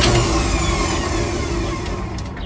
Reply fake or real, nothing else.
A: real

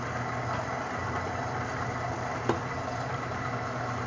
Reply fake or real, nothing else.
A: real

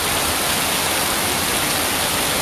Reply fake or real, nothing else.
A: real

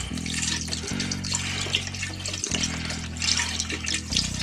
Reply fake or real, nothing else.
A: real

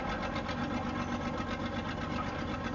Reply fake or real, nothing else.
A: real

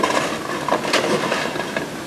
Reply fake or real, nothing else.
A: real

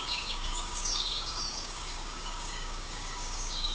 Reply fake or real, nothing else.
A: fake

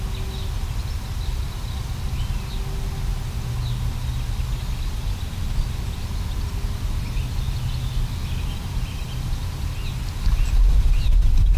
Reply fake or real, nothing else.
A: real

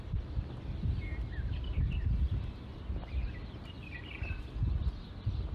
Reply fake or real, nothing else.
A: fake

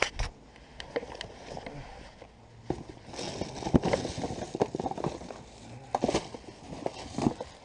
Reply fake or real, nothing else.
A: real